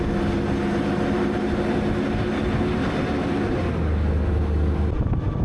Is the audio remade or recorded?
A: recorded